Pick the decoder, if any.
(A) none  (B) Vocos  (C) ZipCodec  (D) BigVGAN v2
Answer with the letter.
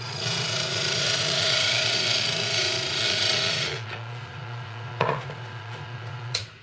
B